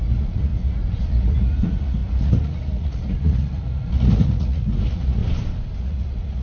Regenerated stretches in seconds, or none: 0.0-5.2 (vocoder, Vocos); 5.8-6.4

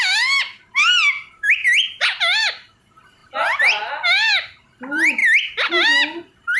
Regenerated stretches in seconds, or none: 0.4-0.9 (vocoder, BigVGAN v2); 3.2-3.9

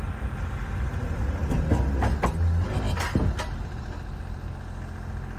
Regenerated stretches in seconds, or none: none